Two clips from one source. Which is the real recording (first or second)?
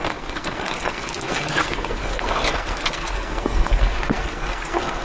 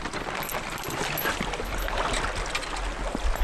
second